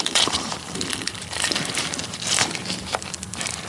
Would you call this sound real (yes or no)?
no